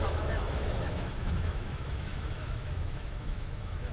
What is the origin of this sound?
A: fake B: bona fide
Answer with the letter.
A